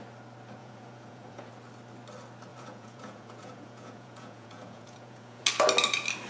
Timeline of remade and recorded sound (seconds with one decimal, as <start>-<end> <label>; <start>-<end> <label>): 0.0-0.6 recorded; 0.6-1.5 remade; 1.5-2.5 recorded; 2.5-5.4 remade; 5.4-6.3 recorded